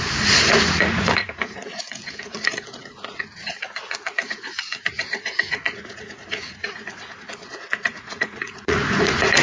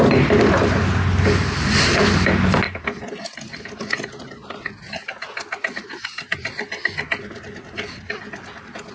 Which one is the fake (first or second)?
first